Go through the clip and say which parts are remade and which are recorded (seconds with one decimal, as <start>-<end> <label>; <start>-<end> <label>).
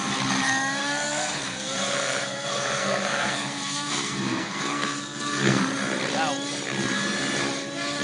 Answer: 0.0-0.8 recorded; 0.8-5.6 remade; 5.6-8.0 recorded